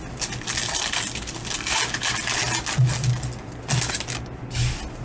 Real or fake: real